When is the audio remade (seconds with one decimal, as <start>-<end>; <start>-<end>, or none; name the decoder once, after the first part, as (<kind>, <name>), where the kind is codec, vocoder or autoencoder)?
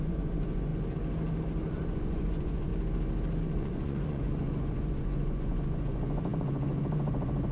0.0-0.7 (vocoder, Vocos); 1.7-2.7; 3.4-7.5